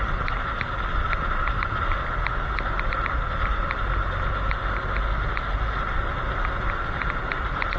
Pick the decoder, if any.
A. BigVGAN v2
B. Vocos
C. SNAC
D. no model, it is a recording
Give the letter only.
D